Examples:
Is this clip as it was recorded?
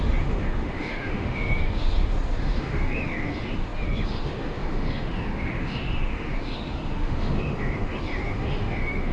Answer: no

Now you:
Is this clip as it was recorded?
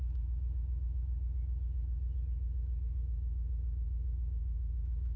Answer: no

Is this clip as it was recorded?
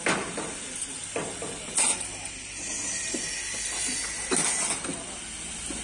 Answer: yes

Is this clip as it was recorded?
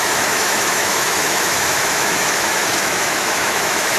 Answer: no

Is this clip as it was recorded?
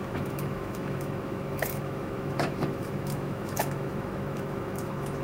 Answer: no